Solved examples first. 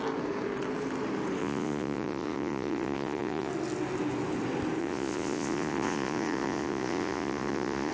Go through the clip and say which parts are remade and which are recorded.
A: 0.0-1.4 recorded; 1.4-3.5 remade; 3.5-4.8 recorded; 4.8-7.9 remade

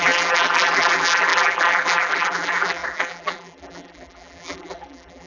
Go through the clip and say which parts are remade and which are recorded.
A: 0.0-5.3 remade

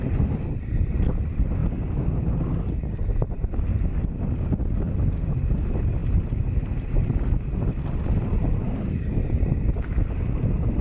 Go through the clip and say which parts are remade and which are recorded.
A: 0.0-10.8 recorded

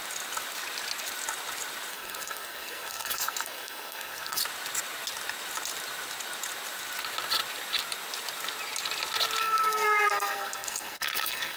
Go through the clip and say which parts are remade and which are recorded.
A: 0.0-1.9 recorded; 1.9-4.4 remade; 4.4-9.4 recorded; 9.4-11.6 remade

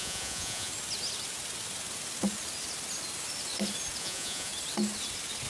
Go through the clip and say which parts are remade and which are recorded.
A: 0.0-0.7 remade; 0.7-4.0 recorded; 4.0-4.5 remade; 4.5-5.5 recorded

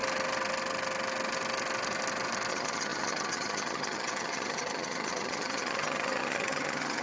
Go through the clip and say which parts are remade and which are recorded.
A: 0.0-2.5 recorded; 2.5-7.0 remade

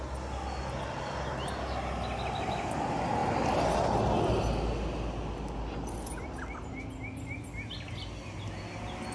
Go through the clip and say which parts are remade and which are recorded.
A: 0.0-9.1 recorded